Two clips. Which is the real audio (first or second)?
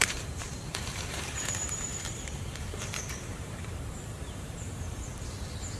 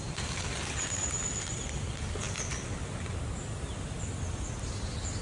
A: second